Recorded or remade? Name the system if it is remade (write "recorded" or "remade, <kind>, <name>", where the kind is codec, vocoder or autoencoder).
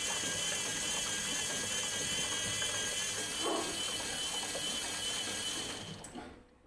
recorded